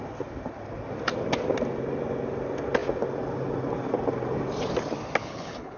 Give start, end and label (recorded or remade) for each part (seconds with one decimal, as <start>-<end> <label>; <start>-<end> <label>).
0.0-5.2 recorded; 5.2-5.8 remade

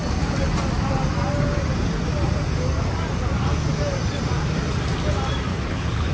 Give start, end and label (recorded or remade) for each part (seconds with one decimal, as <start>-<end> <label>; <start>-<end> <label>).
0.0-5.5 recorded; 5.5-6.1 remade